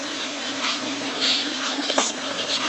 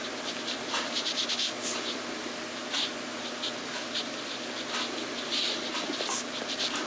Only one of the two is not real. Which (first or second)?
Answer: first